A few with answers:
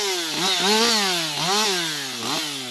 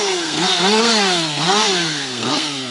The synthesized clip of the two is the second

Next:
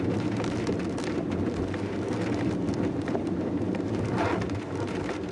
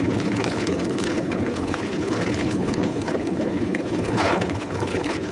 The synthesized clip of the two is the second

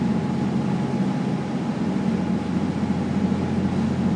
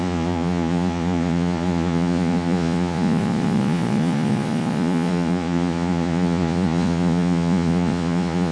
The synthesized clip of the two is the second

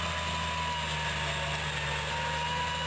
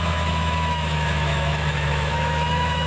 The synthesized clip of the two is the second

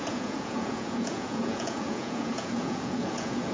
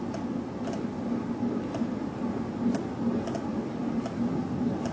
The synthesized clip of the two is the first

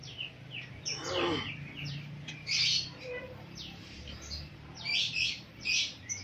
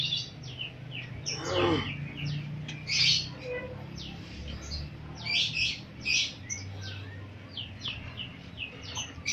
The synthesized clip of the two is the first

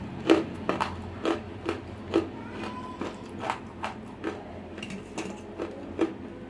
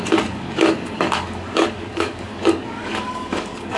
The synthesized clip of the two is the second